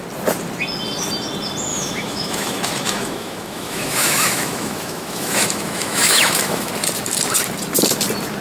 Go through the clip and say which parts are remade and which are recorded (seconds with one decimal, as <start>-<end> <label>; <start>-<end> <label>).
0.0-1.7 recorded; 1.7-6.7 remade; 6.7-8.4 recorded